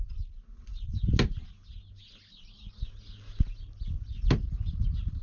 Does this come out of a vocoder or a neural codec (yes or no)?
no